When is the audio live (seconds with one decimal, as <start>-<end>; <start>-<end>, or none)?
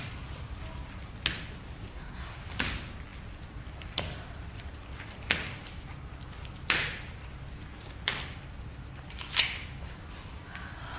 0.0-1.9; 2.4-11.0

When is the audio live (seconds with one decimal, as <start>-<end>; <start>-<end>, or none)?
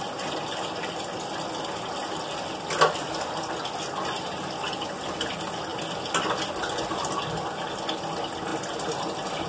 0.0-9.5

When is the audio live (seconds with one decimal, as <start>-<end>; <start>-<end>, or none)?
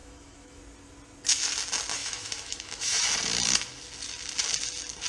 0.6-2.0; 3.0-5.1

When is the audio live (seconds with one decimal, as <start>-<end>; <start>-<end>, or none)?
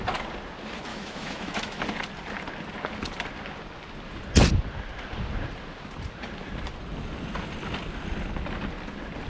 0.0-0.9; 1.8-9.3